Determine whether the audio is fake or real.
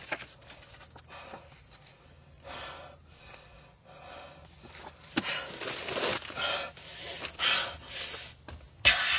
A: real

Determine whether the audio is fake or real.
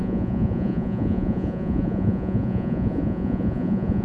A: fake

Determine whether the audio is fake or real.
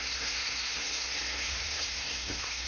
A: fake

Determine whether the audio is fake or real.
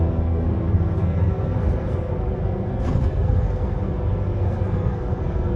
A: fake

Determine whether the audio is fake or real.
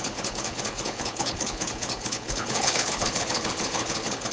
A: fake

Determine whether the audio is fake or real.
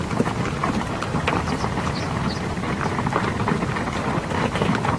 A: real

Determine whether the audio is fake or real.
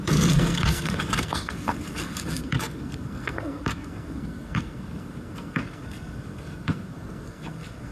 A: fake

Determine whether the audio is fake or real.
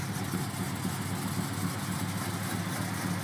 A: real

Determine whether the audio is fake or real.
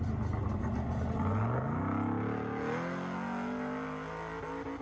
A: real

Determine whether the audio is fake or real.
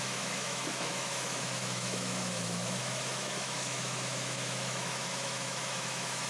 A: fake